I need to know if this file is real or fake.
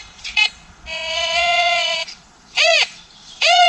fake